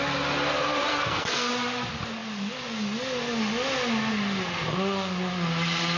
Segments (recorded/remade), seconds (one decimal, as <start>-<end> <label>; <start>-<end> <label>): 0.0-0.9 recorded; 0.9-1.5 remade; 1.5-6.0 recorded